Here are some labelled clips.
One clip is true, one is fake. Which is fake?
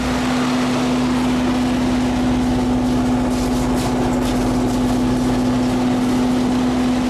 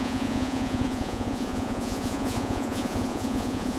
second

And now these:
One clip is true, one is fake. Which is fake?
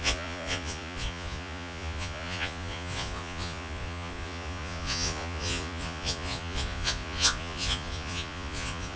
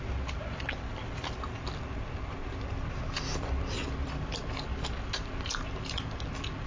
first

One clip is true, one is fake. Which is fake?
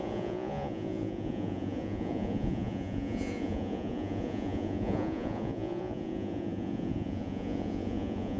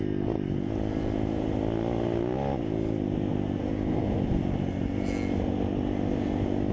first